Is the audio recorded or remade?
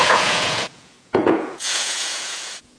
remade